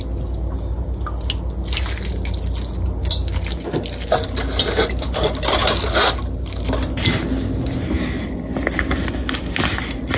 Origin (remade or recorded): recorded